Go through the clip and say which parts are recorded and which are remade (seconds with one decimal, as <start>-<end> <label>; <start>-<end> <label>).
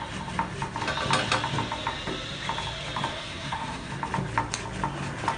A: 0.0-3.1 recorded; 3.1-3.9 remade; 3.9-5.4 recorded